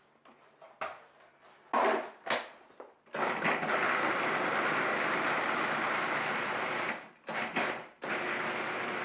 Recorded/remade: recorded